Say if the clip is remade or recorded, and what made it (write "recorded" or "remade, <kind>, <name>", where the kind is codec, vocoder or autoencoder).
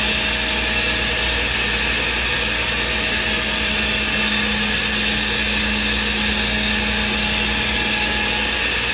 recorded